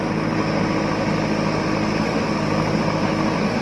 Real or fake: real